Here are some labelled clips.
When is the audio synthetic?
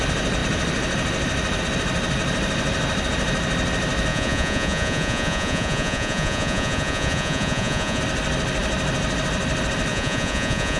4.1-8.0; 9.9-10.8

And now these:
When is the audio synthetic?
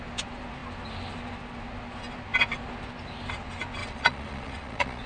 3.8-5.1